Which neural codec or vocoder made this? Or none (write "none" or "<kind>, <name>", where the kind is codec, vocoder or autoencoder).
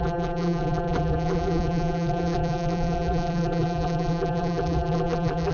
vocoder, BigVGAN v2